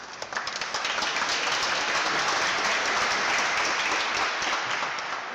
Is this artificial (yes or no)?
no